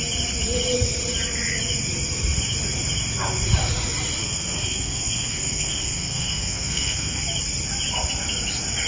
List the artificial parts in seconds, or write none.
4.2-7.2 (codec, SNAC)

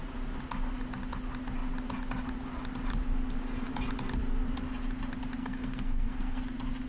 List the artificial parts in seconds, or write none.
5.4-6.4 (codec, SNAC)

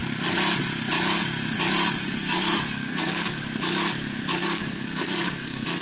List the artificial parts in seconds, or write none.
2.0-3.4 (codec, SNAC); 4.4-5.8

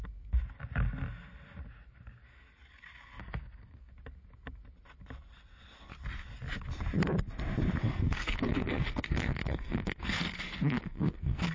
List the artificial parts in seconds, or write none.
3.2-3.9 (codec, SNAC); 7.8-11.5

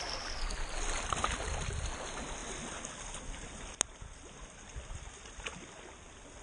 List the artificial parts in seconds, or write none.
none

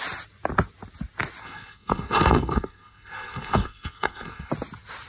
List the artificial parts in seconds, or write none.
1.4-4.5 (codec, SNAC)

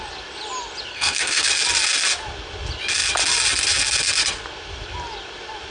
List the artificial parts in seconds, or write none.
0.9-1.5 (codec, SNAC)